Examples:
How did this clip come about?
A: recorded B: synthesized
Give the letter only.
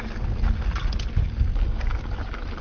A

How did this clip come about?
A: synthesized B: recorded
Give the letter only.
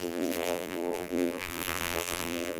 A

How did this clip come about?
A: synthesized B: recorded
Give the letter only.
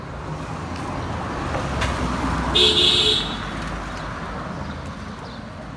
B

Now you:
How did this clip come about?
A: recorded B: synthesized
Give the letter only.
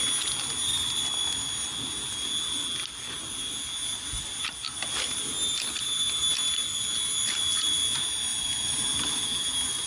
A